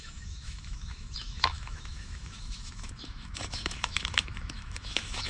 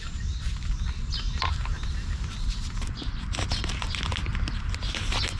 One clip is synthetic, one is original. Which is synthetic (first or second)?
first